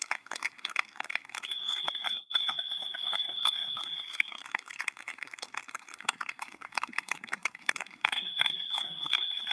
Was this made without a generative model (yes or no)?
no